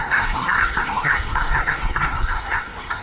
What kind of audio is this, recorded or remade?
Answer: remade